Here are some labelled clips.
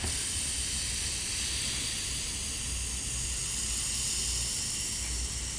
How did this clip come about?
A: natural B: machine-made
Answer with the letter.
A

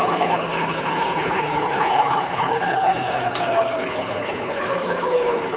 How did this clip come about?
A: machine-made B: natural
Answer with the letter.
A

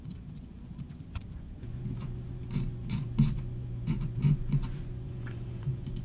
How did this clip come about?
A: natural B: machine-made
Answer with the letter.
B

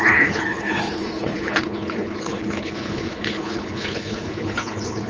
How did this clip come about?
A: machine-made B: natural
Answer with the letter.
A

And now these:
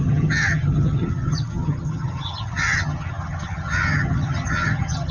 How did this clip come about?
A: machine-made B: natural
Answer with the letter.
A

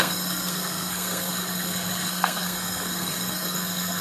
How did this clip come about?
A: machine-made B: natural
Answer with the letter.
A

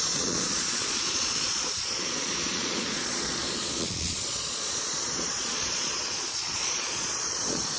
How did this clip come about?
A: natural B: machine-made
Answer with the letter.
B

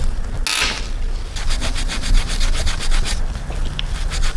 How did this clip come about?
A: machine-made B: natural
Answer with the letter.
B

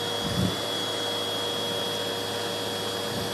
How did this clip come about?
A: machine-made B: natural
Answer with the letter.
B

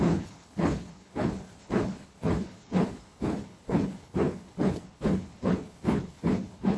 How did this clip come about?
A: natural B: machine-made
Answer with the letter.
B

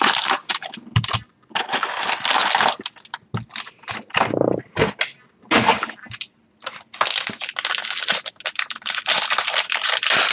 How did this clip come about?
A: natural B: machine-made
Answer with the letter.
A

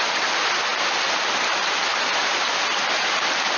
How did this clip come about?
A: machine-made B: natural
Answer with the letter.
B